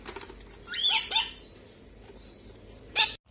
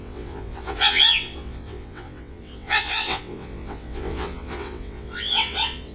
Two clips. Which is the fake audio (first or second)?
second